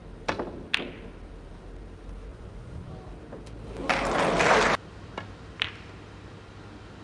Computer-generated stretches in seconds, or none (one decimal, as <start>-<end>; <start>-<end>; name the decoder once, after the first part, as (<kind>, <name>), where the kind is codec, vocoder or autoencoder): 2.3-2.9 (vocoder, Vocos)